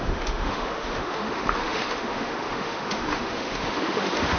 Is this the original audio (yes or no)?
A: no